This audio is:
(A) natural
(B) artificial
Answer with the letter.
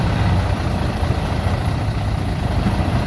B